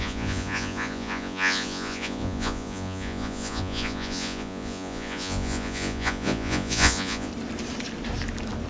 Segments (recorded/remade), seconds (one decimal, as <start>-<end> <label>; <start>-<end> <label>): 0.0-7.3 remade; 7.3-8.7 recorded